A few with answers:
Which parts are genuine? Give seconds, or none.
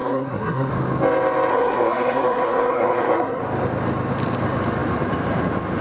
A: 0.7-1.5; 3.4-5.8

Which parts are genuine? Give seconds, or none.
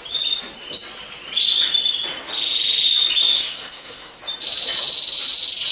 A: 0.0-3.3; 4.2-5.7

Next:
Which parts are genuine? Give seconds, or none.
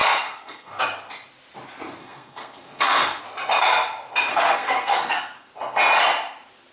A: 0.8-2.0; 3.2-4.3; 5.5-6.7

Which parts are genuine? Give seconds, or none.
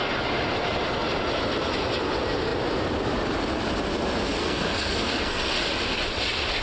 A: 0.0-4.4; 5.6-6.6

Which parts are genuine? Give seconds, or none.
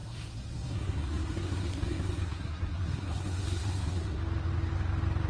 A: 4.2-5.3